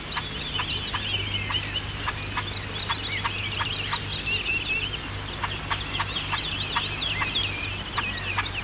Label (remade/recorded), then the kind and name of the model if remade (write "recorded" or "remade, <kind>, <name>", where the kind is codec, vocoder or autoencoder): recorded